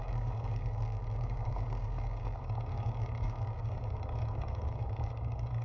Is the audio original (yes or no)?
no